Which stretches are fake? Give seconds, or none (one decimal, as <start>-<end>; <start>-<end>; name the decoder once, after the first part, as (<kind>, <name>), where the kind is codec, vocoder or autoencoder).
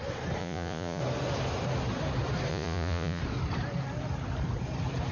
0.4-1.0 (vocoder, Vocos); 2.5-3.2